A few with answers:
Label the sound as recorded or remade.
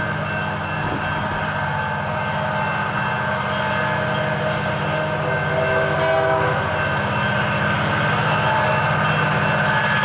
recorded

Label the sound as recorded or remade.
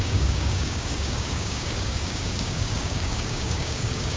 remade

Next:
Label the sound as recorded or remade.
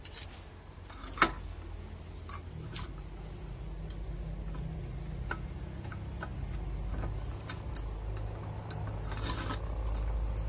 recorded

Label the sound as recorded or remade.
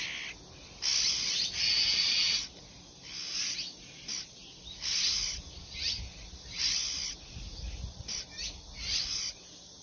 recorded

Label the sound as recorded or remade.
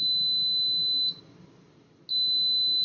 recorded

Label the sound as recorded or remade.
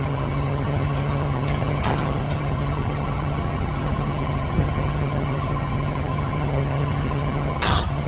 remade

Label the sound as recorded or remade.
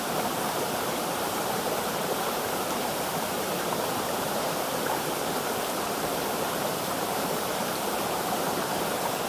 remade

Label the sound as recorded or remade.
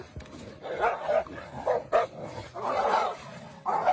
recorded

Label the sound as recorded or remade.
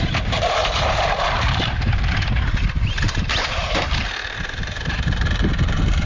remade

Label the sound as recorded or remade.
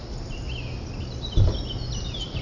recorded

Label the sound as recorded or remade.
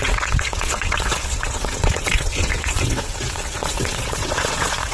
remade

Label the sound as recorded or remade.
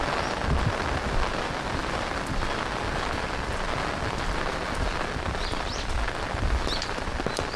recorded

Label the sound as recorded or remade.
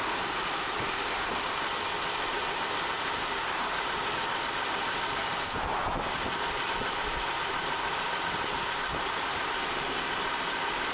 recorded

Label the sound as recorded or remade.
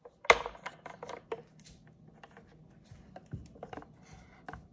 recorded